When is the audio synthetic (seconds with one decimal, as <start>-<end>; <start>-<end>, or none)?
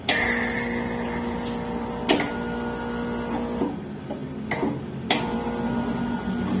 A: none